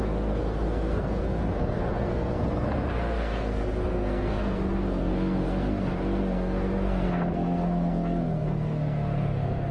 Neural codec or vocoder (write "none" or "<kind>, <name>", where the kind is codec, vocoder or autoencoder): codec, SNAC